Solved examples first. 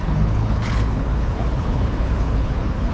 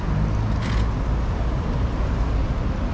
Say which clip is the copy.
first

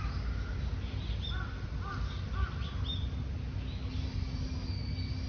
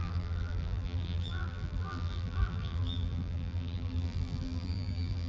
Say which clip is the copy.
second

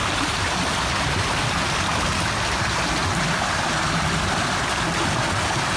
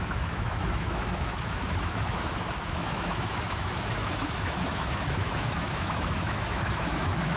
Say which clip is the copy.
second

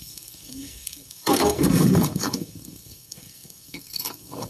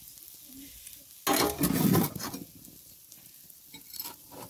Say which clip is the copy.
first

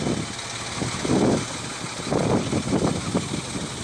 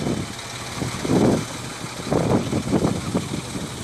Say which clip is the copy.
first